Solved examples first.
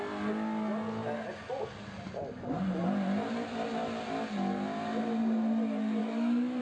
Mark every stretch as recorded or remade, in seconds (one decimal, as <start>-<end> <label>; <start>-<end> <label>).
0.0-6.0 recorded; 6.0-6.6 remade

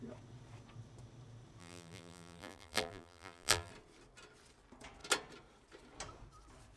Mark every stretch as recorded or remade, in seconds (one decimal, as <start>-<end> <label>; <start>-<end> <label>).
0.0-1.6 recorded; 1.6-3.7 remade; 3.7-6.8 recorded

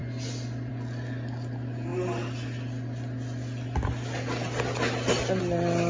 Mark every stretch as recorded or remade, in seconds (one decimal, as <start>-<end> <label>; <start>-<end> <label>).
0.0-5.9 recorded

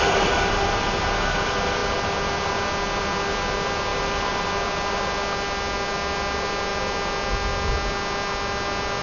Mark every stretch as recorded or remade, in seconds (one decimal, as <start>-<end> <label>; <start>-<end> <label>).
0.0-9.0 recorded

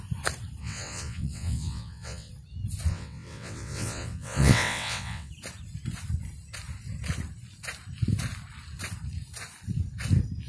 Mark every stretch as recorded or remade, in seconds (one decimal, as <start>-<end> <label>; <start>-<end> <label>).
0.0-0.6 recorded; 0.6-2.3 remade; 2.3-2.9 recorded; 2.9-5.3 remade; 5.3-10.5 recorded

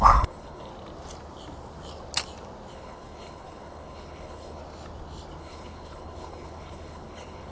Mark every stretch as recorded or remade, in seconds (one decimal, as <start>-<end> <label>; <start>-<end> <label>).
0.0-0.7 remade; 0.7-2.7 recorded; 2.7-4.6 remade; 4.6-5.4 recorded; 5.4-7.5 remade

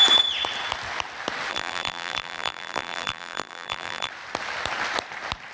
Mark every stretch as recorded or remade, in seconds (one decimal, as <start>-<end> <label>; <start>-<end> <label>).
0.0-1.5 recorded; 1.5-4.1 remade; 4.1-5.5 recorded

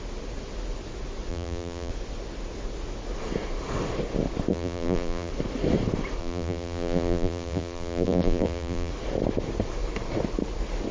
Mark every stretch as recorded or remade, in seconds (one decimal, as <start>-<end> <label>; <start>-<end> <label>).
0.0-1.3 recorded; 1.3-1.9 remade; 1.9-4.5 recorded; 4.5-5.3 remade; 5.3-6.2 recorded; 6.2-8.9 remade; 8.9-10.9 recorded